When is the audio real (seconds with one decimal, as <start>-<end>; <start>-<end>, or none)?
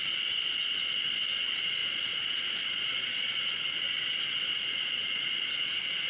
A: none